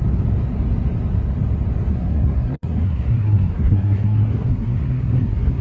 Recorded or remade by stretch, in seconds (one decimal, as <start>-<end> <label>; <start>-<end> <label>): 0.0-1.9 recorded; 1.9-5.6 remade